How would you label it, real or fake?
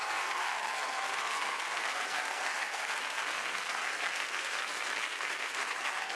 fake